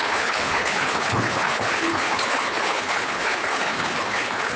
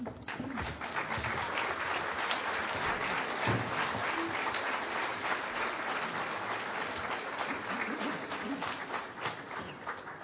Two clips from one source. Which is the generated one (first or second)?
first